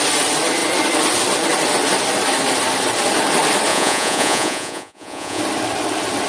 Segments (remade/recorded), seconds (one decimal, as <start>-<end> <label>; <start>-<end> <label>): 0.0-3.7 recorded; 3.7-5.4 remade; 5.4-6.3 recorded